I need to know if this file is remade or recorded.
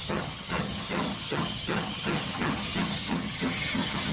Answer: remade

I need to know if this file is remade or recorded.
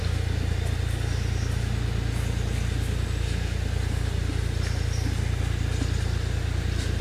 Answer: recorded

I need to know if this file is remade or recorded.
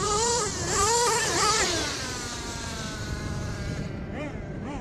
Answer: remade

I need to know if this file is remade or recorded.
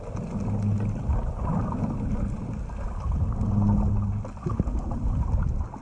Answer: recorded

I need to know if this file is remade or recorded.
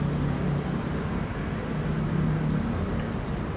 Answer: recorded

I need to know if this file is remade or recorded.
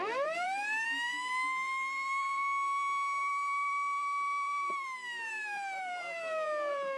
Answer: remade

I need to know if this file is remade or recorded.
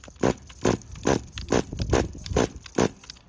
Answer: recorded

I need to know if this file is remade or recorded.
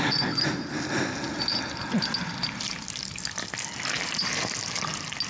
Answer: recorded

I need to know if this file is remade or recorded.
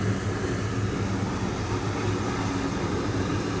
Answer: recorded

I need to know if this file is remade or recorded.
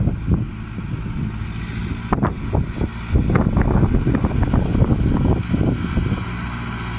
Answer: recorded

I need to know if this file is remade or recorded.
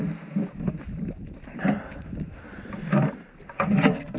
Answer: recorded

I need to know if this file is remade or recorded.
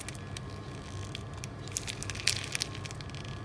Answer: recorded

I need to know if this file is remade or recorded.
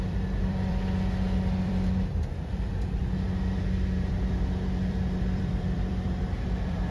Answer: remade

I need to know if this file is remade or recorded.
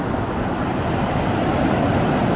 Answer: recorded